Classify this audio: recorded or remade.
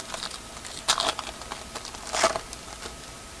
recorded